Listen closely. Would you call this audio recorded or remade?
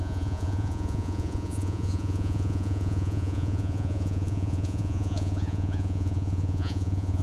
remade